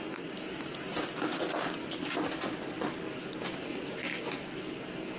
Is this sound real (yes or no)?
yes